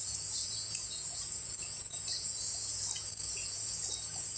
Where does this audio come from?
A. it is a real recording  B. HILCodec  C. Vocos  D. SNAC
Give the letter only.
C